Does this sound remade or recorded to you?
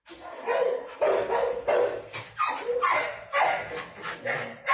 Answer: recorded